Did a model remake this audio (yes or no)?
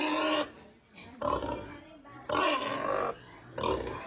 no